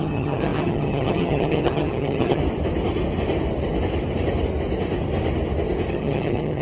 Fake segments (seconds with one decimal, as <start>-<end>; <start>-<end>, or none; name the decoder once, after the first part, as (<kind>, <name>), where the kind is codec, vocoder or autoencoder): 0.0-2.4 (vocoder, HiFi-GAN); 5.9-6.6